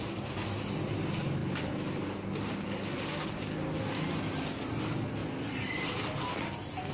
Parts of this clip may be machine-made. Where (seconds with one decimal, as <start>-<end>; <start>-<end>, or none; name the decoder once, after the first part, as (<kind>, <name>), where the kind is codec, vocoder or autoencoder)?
none